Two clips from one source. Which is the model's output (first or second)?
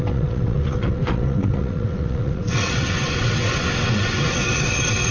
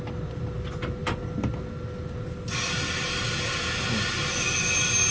first